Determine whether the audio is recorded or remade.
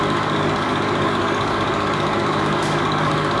remade